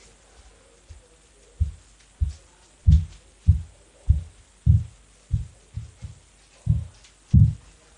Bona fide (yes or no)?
yes